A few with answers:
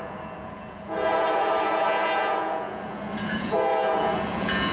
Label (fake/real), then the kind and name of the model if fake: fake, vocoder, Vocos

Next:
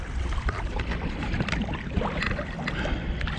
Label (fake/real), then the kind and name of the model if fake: fake, vocoder, BigVGAN v2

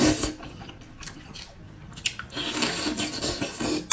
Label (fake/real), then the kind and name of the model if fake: real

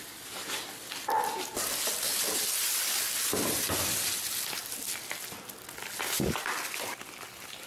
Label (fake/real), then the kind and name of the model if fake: real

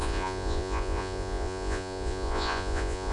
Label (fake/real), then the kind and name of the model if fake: fake, vocoder, Vocos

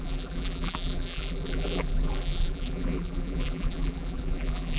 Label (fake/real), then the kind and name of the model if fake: fake, vocoder, BigVGAN v2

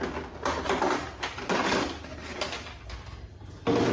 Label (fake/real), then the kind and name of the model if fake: real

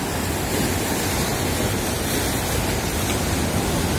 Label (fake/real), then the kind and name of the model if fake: real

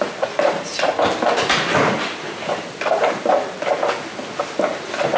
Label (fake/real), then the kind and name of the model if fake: real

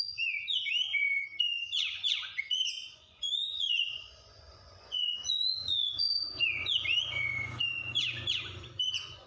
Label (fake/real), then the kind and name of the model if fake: fake, vocoder, Vocos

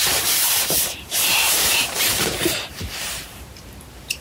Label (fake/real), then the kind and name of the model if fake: fake, vocoder, BigVGAN v2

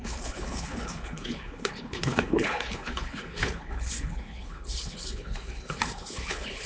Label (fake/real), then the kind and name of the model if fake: fake, codec, HILCodec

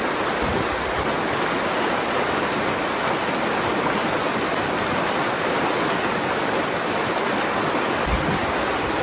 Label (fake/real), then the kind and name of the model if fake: real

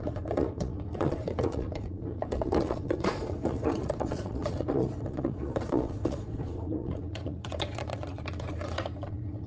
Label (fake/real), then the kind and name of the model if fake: fake, vocoder, Vocos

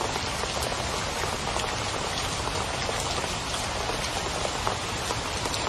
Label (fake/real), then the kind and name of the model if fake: real